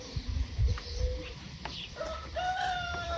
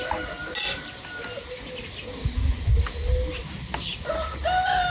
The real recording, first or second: second